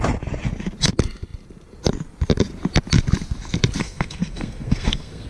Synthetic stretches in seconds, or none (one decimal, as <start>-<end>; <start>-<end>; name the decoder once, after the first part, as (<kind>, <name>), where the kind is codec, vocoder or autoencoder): 3.8-5.3 (codec, SNAC)